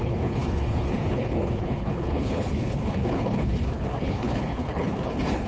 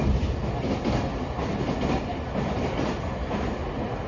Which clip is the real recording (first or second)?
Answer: second